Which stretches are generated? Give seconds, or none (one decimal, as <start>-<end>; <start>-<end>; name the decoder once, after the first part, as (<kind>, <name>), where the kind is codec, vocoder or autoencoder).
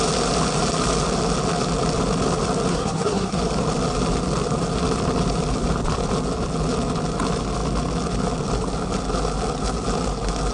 2.7-3.4 (codec, SNAC)